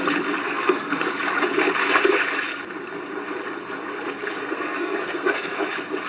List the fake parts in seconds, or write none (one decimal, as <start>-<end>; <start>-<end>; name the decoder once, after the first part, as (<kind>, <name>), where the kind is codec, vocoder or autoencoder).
0.4-1.1 (codec, SNAC); 4.4-5.6